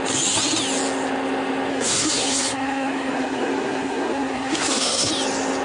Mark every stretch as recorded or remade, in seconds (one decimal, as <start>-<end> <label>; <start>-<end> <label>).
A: 0.0-1.7 recorded; 1.7-5.1 remade; 5.1-5.6 recorded